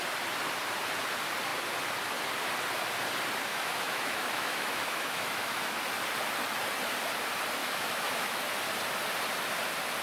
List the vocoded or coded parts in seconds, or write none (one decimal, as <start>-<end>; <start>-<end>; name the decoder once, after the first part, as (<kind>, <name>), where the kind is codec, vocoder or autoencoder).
3.5-5.8 (autoencoder, DAC-VAE); 7.6-8.4